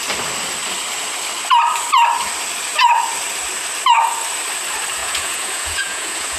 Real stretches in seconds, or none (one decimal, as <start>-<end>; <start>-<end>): 0.0-5.0